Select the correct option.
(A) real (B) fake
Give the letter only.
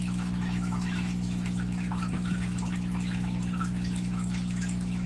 B